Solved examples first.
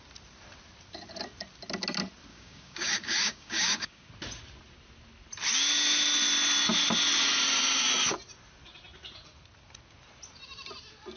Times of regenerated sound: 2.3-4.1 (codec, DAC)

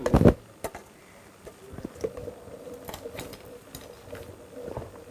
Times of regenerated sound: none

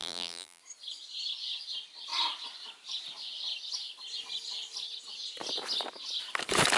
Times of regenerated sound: 0.0-0.6 (vocoder, BigVGAN v2)